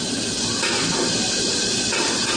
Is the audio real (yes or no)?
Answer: yes